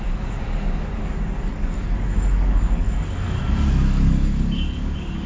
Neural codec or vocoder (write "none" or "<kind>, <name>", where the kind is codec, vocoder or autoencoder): codec, DAC